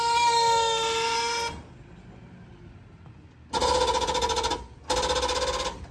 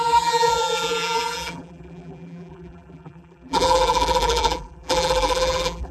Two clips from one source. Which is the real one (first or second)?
first